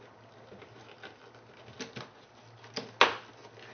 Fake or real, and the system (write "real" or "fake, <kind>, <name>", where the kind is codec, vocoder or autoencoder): real